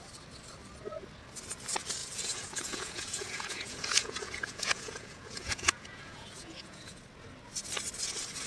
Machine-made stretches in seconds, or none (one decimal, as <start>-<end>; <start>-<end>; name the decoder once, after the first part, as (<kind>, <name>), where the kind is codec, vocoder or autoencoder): 2.0-7.0 (vocoder, Vocos)

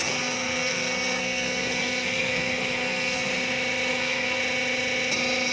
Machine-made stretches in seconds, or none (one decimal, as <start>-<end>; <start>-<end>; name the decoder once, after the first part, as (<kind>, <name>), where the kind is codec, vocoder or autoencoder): 0.0-3.3 (codec, SNAC); 3.9-4.4

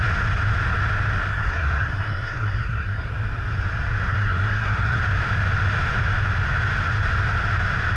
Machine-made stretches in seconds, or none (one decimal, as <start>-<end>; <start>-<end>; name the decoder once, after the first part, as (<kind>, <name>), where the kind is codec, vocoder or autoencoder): 1.3-3.1 (codec, SNAC); 4.1-5.0

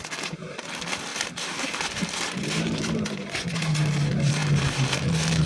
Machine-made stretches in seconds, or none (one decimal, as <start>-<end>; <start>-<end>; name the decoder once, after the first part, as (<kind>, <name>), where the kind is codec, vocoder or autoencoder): none